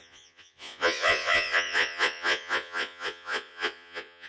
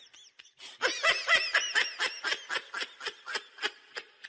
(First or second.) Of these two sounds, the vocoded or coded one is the first